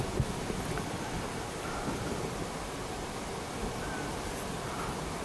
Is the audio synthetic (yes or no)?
no